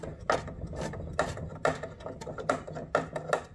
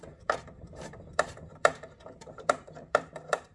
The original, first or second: first